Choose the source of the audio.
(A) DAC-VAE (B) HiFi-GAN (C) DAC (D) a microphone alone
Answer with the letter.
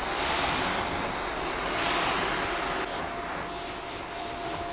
D